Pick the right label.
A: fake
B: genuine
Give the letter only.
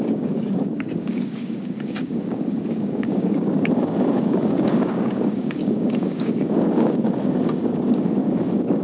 A